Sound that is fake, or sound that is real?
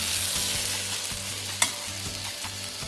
real